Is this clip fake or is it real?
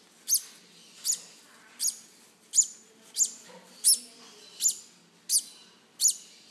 real